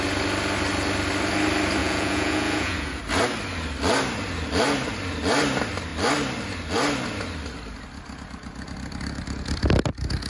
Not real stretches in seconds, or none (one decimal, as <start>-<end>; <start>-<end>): 1.8-3.0